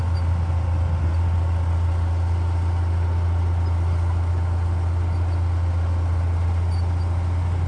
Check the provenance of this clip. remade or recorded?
recorded